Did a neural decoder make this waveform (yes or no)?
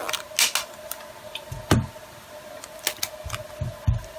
no